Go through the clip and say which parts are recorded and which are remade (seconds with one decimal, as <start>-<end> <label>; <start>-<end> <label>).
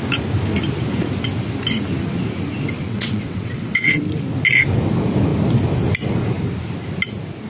0.0-2.8 recorded; 2.8-4.0 remade; 4.0-7.5 recorded